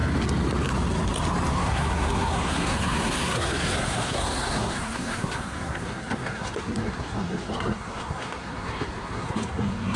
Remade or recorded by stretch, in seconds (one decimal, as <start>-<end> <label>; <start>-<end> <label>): 0.0-1.5 recorded; 1.5-10.0 remade